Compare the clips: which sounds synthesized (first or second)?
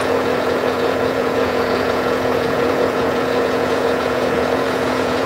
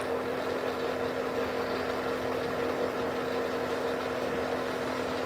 first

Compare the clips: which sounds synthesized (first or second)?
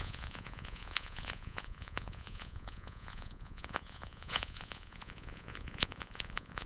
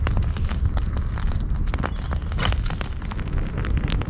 first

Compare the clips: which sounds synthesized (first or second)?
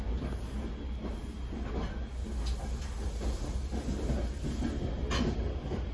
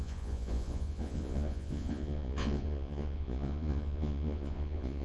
second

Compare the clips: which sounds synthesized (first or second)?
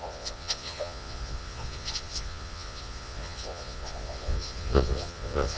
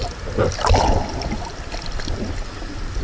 first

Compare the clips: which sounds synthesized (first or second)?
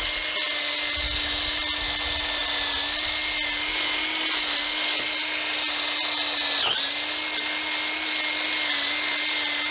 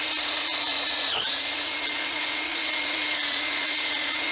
second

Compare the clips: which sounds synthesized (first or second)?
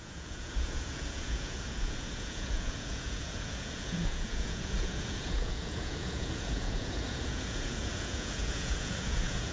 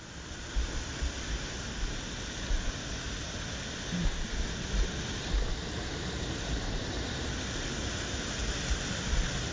first